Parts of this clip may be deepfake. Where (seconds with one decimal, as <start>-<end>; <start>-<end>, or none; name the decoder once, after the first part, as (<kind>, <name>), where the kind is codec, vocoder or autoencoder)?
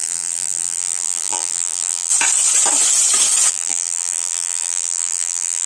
0.0-2.1 (vocoder, BigVGAN v2); 3.5-5.7